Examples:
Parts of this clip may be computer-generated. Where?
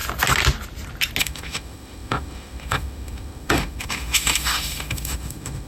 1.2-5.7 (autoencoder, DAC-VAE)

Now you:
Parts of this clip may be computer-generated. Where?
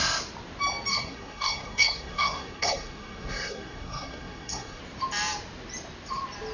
0.9-4.8 (codec, SNAC)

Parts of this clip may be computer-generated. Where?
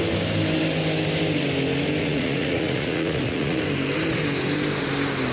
2.0-3.6 (vocoder, Vocos)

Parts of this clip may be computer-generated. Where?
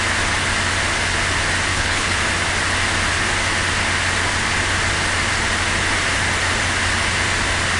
1.7-2.2 (codec, HILCodec)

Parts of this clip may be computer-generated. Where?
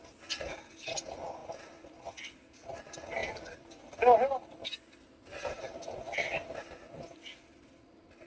none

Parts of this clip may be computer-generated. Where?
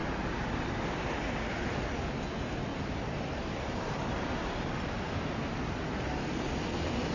none